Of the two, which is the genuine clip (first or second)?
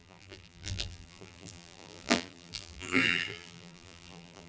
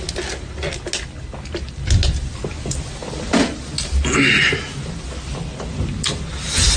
second